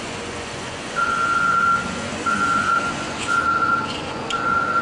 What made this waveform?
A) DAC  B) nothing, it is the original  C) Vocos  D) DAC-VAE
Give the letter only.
C